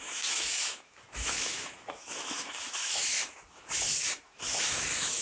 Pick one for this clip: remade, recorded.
remade